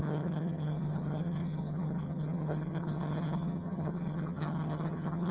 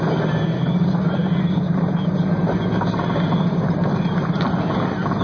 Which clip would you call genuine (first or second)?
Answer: second